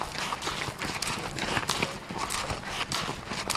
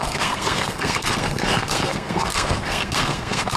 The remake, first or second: second